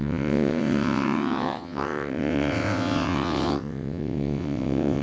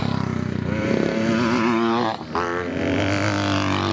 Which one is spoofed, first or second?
first